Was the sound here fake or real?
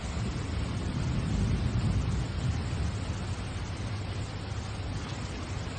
real